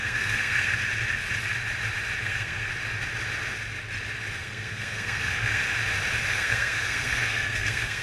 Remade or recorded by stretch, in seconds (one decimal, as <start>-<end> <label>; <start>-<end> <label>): 0.0-0.8 remade; 0.8-2.2 recorded; 2.2-2.7 remade; 2.7-4.4 recorded; 4.4-5.6 remade; 5.6-6.3 recorded; 6.3-8.0 remade